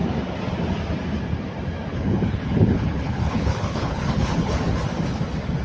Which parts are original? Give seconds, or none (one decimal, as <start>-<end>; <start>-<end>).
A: 0.0-1.9; 4.6-5.6